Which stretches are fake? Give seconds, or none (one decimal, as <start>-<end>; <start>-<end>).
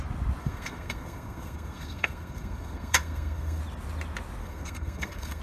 0.4-3.6; 4.4-5.4